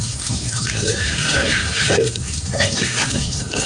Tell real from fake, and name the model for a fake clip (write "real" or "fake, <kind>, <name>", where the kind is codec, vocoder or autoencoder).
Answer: fake, codec, SNAC